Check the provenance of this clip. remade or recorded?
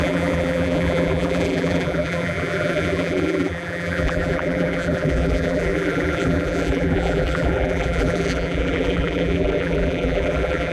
remade